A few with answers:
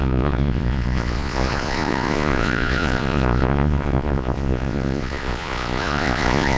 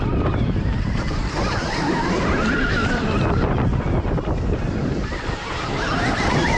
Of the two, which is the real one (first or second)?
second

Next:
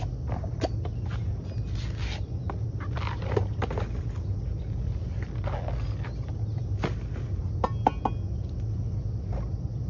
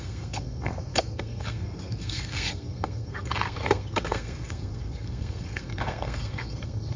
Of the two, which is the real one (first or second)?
first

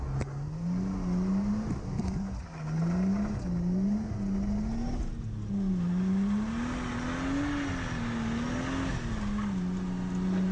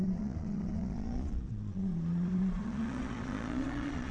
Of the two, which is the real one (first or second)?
first